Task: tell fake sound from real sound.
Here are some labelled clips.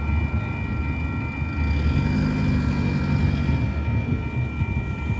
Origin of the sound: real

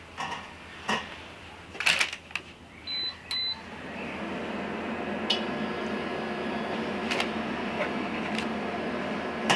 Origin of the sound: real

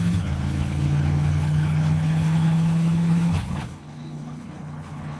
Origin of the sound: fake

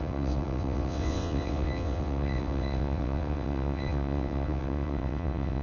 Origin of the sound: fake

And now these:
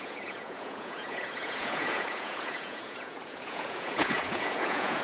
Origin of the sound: fake